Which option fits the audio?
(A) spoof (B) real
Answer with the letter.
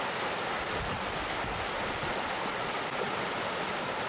B